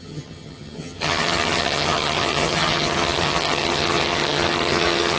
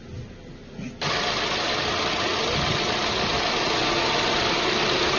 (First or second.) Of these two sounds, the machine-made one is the first